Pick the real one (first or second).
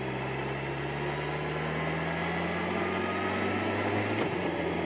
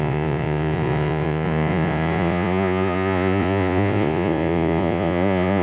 first